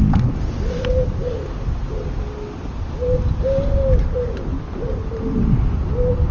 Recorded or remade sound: recorded